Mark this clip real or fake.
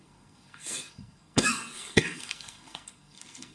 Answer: fake